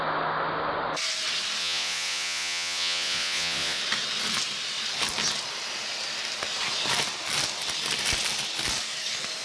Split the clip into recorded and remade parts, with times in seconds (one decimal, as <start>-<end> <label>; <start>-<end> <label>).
0.0-1.6 recorded; 1.6-3.8 remade; 3.8-9.4 recorded